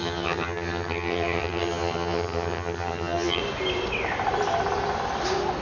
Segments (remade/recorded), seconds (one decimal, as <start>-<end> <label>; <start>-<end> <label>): 0.0-3.4 remade; 3.4-5.6 recorded